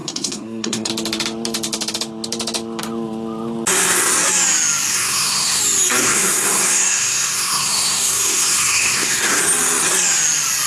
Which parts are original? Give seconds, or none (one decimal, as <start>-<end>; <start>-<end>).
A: 0.9-4.9; 5.6-6.0; 9.4-10.7